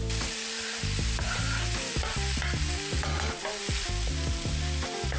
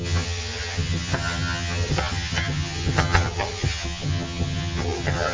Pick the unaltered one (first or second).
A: first